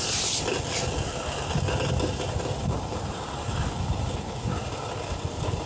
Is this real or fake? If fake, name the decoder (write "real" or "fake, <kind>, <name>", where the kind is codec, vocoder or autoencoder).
real